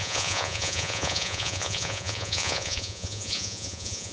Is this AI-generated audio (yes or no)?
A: yes